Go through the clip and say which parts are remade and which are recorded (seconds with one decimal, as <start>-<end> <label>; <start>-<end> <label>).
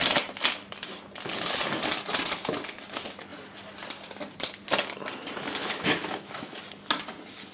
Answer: 0.0-5.6 recorded; 5.6-6.6 remade; 6.6-7.5 recorded